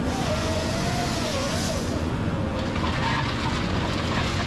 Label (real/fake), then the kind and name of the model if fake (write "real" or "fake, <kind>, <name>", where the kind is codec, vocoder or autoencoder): fake, vocoder, Vocos